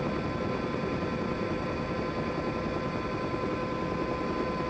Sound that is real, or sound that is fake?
real